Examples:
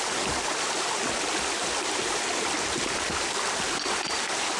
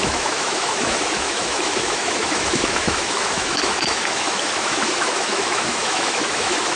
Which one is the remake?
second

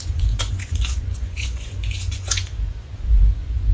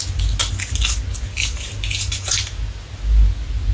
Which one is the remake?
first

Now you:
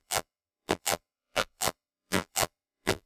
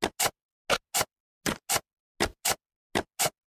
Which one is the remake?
first